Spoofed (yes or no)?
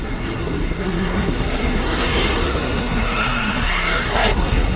yes